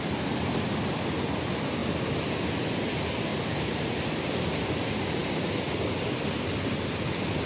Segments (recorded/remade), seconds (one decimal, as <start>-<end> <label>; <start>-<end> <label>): 0.0-3.3 recorded; 3.3-4.1 remade; 4.1-7.5 recorded